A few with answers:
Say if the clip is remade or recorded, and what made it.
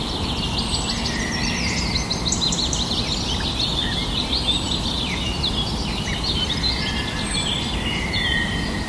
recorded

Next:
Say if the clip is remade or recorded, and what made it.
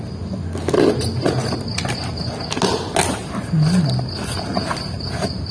recorded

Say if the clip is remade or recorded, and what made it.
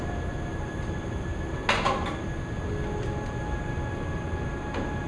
recorded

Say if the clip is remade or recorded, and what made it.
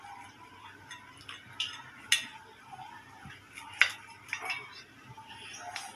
recorded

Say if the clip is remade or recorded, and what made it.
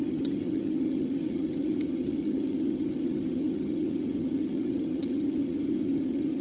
remade, vocoder, HiFi-GAN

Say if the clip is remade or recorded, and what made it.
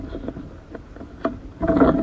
recorded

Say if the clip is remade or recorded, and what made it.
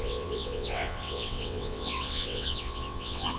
remade, vocoder, WaveNeXt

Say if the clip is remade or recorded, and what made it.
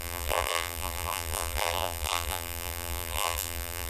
remade, vocoder, BigVGAN v2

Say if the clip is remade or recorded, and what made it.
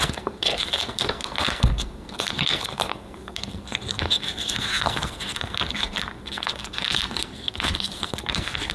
remade, codec, SNAC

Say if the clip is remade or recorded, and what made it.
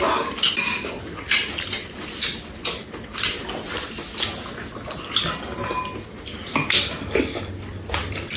recorded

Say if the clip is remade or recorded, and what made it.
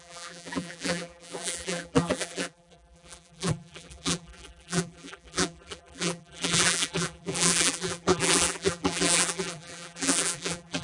remade, vocoder, BigVGAN v2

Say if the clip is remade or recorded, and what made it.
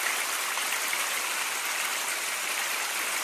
recorded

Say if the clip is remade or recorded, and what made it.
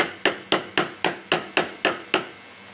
recorded